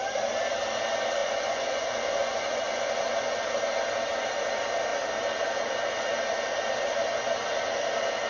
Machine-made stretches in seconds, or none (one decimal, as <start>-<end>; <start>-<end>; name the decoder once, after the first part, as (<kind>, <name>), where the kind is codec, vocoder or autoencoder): 1.2-3.0 (vocoder, Vocos)